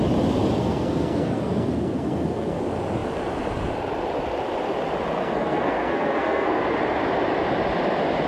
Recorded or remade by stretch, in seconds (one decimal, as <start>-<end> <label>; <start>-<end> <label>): 0.0-0.6 recorded; 0.6-2.6 remade; 2.6-5.2 recorded; 5.2-6.6 remade; 6.6-8.3 recorded